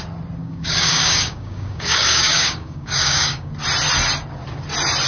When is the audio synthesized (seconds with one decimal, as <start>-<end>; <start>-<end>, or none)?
0.4-3.5